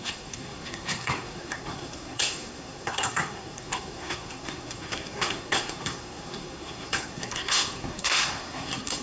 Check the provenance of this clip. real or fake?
fake